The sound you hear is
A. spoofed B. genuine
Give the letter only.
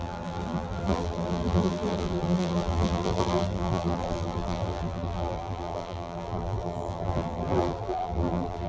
A